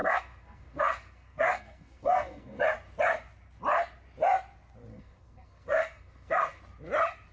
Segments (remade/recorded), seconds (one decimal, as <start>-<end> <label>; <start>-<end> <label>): 0.0-2.6 remade; 2.6-4.9 recorded; 4.9-6.6 remade; 6.6-7.3 recorded